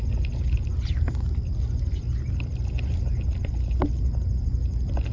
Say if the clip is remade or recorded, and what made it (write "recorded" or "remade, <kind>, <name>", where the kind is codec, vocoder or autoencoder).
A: recorded